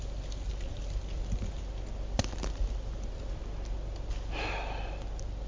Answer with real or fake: real